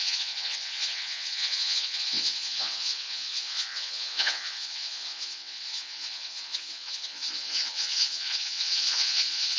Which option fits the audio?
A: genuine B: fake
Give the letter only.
B